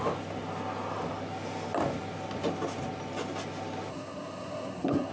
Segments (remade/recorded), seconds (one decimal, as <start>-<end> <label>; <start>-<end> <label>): 0.0-3.9 recorded; 3.9-5.1 remade